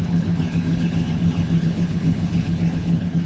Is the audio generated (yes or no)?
yes